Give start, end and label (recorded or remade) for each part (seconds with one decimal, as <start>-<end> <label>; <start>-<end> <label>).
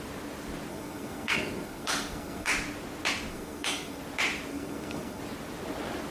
0.0-0.7 recorded; 0.7-2.5 remade; 2.5-3.3 recorded; 3.3-4.0 remade; 4.0-4.5 recorded; 4.5-5.2 remade; 5.2-6.1 recorded